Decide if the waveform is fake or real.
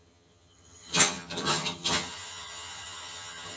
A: fake